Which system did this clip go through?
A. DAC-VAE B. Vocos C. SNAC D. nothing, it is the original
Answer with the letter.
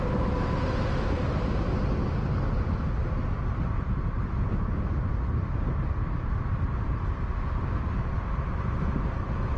D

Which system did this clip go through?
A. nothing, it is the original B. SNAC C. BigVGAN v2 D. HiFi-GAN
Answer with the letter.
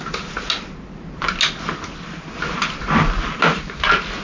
A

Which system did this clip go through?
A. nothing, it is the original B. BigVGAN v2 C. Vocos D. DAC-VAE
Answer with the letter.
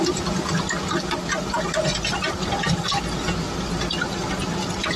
A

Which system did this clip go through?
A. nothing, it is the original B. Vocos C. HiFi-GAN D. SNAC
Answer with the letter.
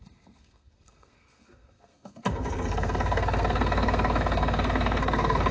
D